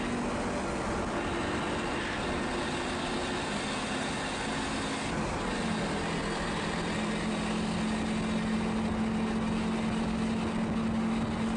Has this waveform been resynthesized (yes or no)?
no